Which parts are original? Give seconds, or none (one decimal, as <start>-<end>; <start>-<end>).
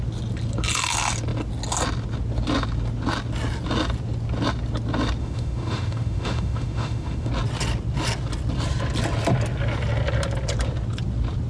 0.0-5.2; 7.3-11.5